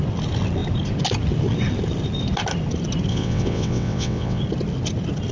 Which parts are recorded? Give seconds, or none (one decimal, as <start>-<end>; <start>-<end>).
0.0-3.1; 4.4-5.3